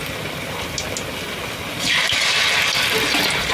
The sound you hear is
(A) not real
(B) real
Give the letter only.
B